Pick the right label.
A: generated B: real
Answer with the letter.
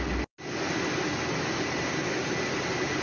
B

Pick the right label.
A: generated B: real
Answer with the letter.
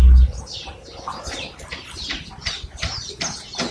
B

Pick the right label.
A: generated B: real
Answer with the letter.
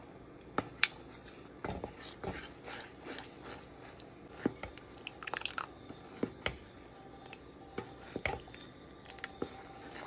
B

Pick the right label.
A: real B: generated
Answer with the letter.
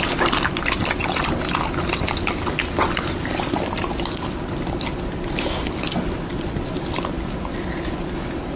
A